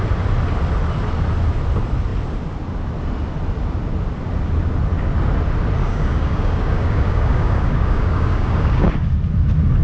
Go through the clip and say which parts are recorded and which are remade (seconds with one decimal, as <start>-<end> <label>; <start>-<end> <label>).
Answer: 0.0-5.8 recorded; 5.8-8.9 remade; 8.9-9.8 recorded